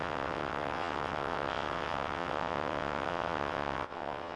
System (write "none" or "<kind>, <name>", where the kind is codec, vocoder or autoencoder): vocoder, WaveNeXt